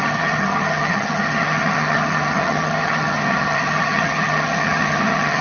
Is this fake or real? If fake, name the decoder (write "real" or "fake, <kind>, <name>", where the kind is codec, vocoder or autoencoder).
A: fake, vocoder, HiFi-GAN